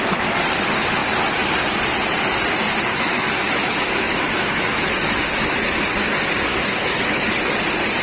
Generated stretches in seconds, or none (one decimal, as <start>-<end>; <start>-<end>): 2.9-4.9; 6.5-7.3